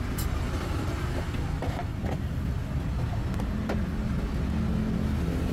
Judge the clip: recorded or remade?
recorded